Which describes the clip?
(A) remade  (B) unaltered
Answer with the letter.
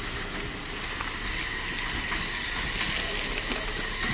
B